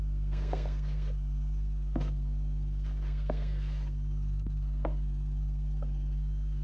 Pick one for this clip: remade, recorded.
remade